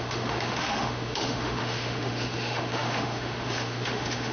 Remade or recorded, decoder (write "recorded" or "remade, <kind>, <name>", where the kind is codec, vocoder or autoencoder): remade, autoencoder, DAC-VAE